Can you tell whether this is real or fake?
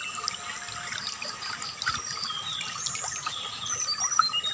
real